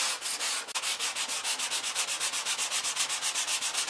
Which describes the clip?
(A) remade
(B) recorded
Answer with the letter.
B